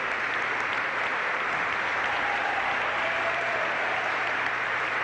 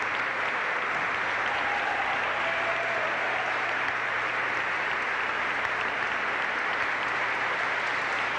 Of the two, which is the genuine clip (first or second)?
second